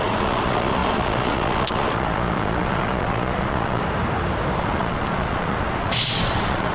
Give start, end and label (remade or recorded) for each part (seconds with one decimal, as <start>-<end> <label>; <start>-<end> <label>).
0.0-3.8 remade; 3.8-4.6 recorded; 4.6-6.7 remade